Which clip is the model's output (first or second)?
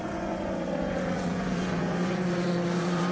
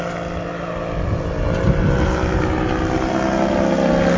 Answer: first